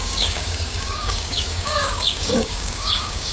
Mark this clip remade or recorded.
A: remade